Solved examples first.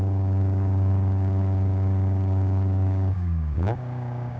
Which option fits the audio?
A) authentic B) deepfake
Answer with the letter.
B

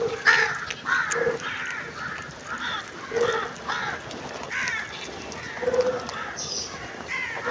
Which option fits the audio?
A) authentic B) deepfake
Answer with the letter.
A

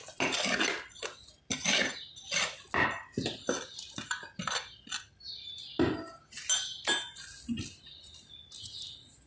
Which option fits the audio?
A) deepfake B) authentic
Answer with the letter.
B